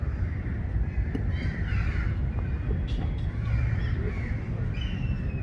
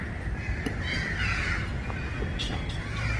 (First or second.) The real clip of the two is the second